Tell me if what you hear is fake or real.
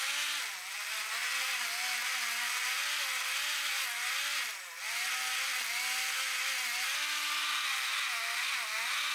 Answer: real